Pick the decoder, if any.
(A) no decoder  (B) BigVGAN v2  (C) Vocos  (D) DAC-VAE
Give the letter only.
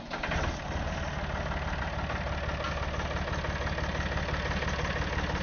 A